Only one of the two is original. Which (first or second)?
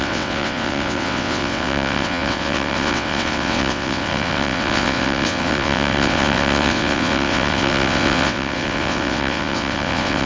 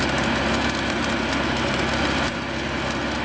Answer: second